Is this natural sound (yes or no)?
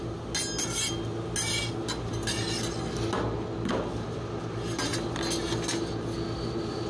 yes